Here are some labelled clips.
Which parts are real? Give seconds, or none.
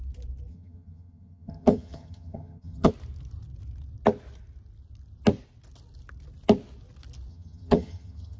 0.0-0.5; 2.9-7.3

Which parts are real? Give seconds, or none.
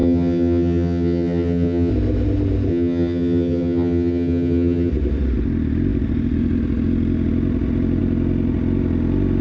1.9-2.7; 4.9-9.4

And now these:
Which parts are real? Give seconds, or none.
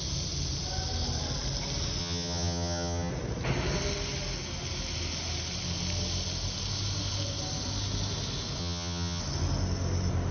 0.0-2.0; 3.1-8.6; 9.2-10.3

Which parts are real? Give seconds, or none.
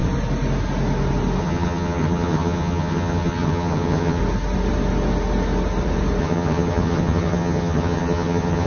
0.0-1.4; 4.2-6.2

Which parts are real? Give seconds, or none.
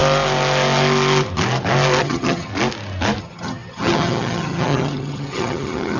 0.0-2.0; 2.5-3.2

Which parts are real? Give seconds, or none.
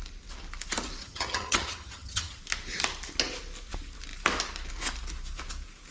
0.0-1.0; 2.4-5.9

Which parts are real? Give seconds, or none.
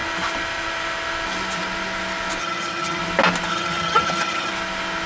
0.0-2.4; 3.0-3.5; 4.5-5.1